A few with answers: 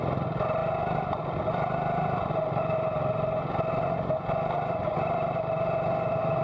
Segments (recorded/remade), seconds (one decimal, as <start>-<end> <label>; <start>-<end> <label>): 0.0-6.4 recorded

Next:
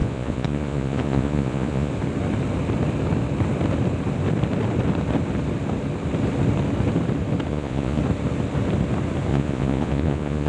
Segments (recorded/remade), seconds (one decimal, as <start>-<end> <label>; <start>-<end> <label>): 0.0-1.9 remade; 1.9-7.5 recorded; 7.5-8.0 remade; 8.0-9.3 recorded; 9.3-10.5 remade

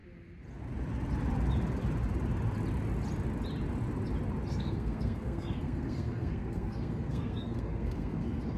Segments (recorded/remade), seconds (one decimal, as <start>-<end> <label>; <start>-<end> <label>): 0.0-4.5 recorded; 4.5-8.6 remade

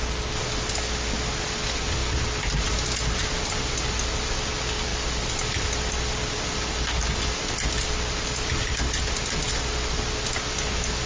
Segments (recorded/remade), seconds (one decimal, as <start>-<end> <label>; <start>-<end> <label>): 0.0-11.1 recorded

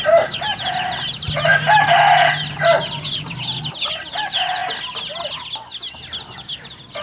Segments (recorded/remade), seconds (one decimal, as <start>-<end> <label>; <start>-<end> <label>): 0.0-7.0 recorded

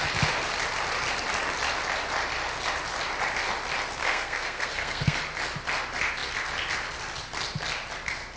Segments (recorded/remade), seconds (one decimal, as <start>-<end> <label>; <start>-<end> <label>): 0.0-4.0 recorded; 4.0-5.2 remade; 5.2-8.4 recorded

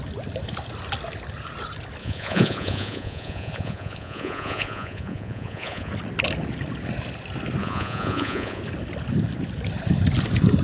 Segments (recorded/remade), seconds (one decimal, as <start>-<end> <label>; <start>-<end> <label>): 0.0-2.0 recorded; 2.0-5.9 remade; 5.9-7.6 recorded; 7.6-8.6 remade; 8.6-10.6 recorded

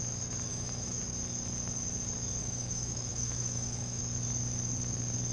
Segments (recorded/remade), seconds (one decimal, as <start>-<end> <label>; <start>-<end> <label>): 0.0-0.5 recorded; 0.5-1.0 remade; 1.0-2.4 recorded; 2.4-4.0 remade; 4.0-5.3 recorded